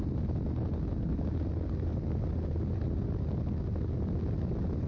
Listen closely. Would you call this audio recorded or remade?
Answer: recorded